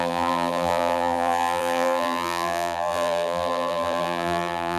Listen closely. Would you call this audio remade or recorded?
remade